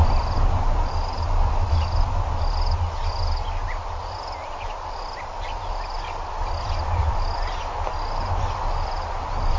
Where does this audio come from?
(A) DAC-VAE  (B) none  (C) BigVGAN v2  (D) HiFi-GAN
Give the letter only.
B